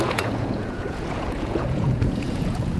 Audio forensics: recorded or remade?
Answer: remade